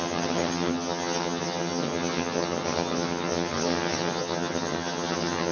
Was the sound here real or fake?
fake